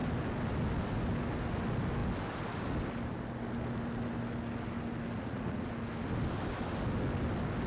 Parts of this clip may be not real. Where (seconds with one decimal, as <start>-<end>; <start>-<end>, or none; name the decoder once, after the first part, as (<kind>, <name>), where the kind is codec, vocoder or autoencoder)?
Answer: 5.2-5.7 (vocoder, Vocos)